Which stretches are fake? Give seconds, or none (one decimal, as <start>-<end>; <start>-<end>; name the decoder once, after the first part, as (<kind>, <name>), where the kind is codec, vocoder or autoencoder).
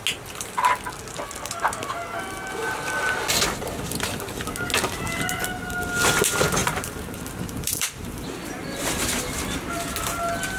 6.6-8.6 (vocoder, BigVGAN v2)